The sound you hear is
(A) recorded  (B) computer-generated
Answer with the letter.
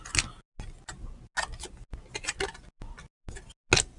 A